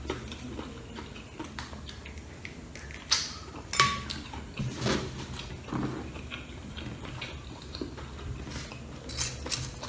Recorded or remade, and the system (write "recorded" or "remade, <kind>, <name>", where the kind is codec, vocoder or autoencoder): recorded